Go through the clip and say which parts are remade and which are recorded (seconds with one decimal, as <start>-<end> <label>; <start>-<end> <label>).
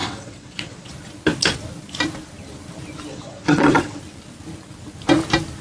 0.0-0.9 remade; 0.9-3.1 recorded; 3.1-4.0 remade; 4.0-5.6 recorded